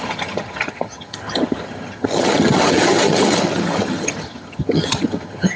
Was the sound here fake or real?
fake